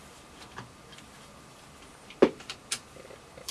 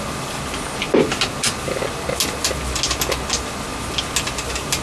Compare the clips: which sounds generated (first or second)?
first